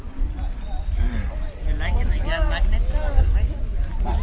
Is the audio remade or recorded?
recorded